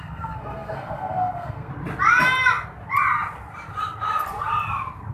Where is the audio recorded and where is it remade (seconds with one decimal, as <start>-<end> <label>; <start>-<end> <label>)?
0.0-1.7 remade; 1.7-5.1 recorded